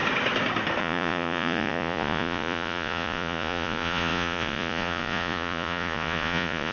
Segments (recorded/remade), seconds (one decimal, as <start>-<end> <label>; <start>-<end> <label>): 0.0-0.8 recorded; 0.8-6.7 remade